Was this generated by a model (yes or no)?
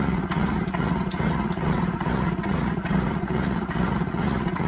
yes